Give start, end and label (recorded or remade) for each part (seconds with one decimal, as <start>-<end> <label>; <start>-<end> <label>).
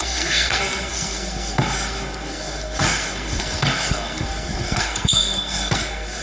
0.0-6.2 remade